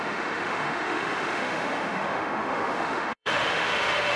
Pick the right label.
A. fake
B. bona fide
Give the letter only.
A